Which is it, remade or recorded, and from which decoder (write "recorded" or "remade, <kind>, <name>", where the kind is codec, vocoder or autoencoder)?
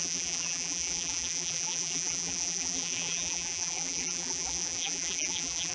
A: remade, vocoder, BigVGAN v2